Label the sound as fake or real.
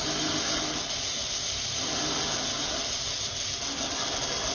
real